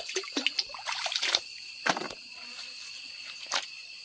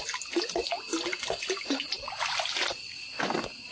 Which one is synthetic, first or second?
first